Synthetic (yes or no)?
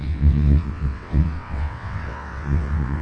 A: yes